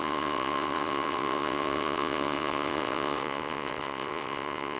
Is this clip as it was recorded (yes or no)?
no